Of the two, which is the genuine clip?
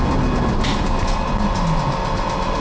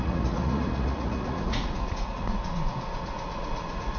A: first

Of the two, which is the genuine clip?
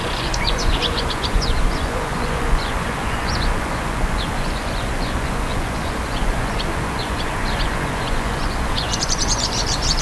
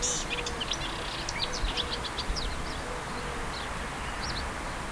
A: second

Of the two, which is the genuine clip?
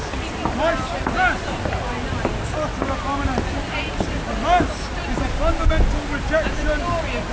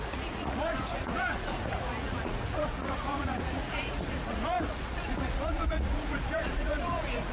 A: first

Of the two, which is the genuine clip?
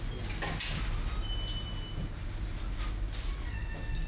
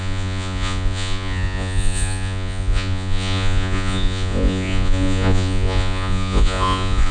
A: first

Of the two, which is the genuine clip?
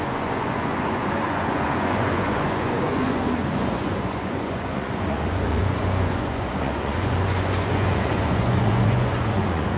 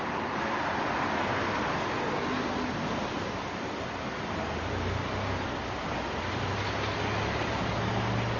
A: second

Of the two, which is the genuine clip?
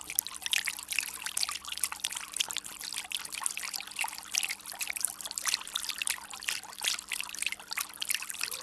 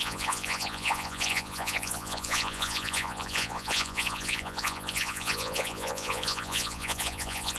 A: first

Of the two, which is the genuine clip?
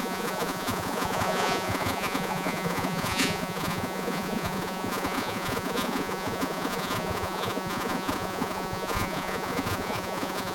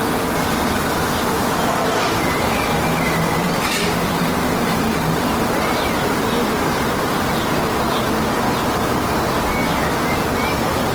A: second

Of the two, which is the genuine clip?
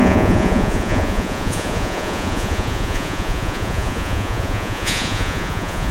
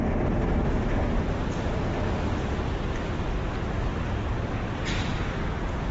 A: second